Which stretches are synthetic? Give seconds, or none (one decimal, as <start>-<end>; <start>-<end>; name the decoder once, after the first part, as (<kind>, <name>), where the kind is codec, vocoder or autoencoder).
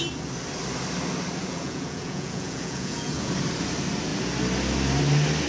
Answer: 1.4-3.3 (vocoder, Vocos)